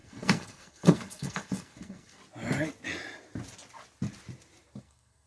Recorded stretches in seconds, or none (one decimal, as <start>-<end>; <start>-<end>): 2.2-4.8